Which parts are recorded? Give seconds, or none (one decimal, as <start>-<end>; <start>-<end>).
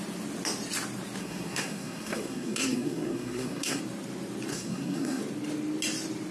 0.0-1.2; 3.8-4.5; 5.2-6.3